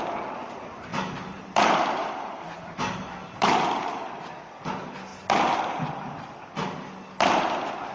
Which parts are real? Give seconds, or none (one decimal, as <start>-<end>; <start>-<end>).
0.0-0.9; 4.1-7.9